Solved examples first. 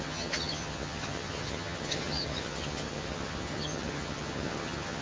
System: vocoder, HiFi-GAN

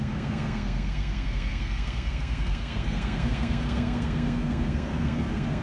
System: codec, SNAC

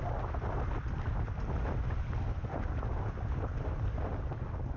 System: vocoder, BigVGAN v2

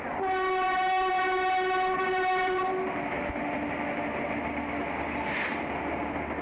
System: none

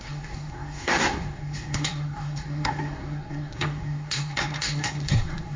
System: codec, SNAC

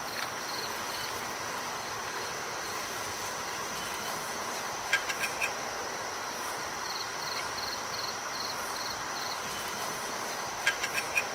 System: vocoder, BigVGAN v2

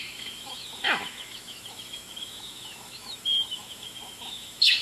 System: autoencoder, DAC-VAE